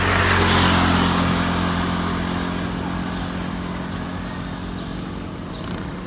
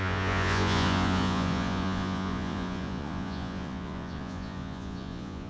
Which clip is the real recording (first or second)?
first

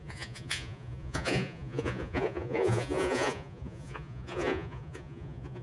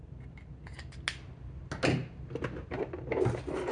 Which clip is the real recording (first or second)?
second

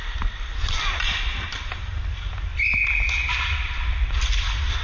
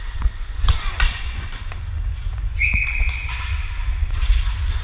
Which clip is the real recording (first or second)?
first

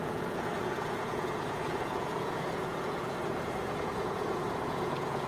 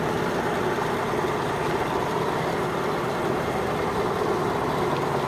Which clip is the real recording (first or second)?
second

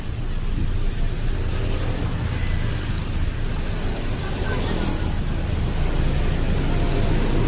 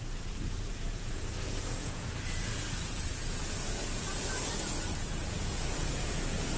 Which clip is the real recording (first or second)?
first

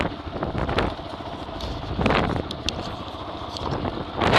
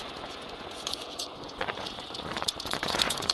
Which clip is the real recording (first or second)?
first